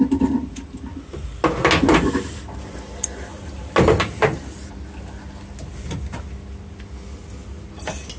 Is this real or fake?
real